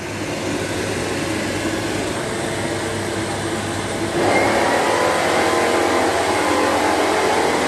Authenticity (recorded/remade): recorded